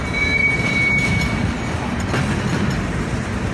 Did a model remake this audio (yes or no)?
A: no